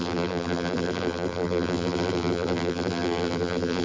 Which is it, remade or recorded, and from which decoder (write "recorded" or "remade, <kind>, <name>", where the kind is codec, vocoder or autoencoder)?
remade, vocoder, BigVGAN v2